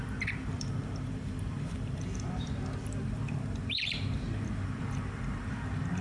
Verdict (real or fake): fake